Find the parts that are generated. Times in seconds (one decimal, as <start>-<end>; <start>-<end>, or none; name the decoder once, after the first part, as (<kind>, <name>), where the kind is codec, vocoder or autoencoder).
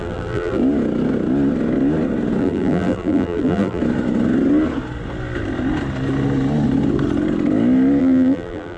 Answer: 0.0-0.6 (vocoder, BigVGAN v2); 2.4-3.8; 8.0-8.8